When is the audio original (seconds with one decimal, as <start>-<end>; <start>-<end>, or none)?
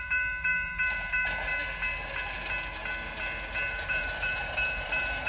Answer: 1.5-3.7